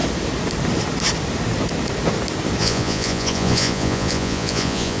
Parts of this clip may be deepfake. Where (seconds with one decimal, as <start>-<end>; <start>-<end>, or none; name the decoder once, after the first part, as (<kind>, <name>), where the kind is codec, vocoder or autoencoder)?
2.6-5.0 (vocoder, Vocos)